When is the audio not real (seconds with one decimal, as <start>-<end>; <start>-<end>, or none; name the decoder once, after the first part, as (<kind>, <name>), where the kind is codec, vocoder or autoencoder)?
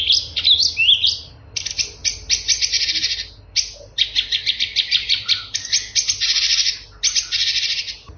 none